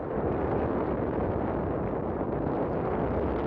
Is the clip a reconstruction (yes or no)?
no